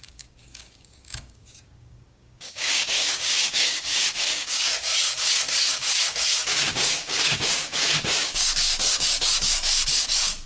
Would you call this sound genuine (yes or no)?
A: no